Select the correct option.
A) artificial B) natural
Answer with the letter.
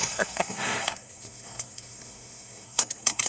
A